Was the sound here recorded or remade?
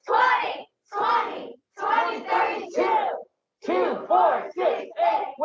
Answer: recorded